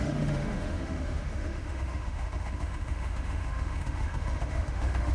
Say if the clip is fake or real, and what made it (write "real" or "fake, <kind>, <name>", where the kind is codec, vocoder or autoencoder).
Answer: fake, autoencoder, DAC-VAE